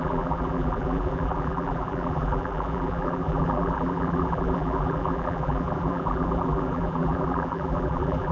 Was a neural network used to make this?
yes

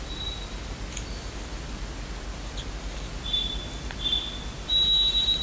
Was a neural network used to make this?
no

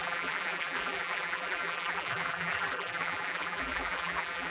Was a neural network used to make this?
yes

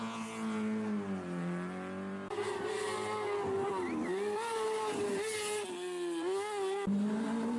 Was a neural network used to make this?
no